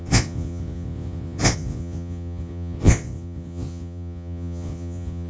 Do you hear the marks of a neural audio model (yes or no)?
yes